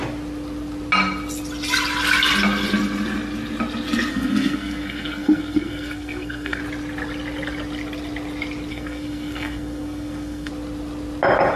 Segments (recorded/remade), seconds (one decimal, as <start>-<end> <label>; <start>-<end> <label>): 0.0-4.1 recorded; 4.1-6.6 remade; 6.6-8.7 recorded; 8.7-10.5 remade; 10.5-11.6 recorded